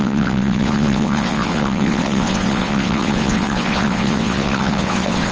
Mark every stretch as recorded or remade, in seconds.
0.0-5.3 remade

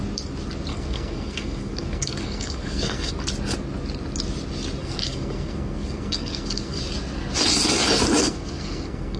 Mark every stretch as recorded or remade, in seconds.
0.0-0.7 recorded; 0.7-3.1 remade; 3.1-4.8 recorded; 4.8-6.8 remade; 6.8-8.2 recorded; 8.2-9.2 remade

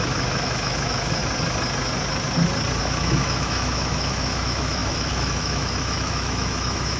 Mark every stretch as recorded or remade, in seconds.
0.0-1.2 remade; 1.2-2.8 recorded; 2.8-7.0 remade